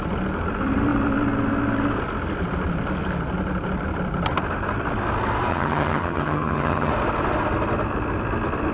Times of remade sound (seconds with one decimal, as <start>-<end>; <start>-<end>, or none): 5.5-6.9